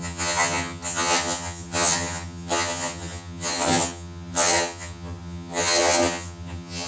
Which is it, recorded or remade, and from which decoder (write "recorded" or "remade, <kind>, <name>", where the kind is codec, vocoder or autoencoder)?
remade, vocoder, HiFi-GAN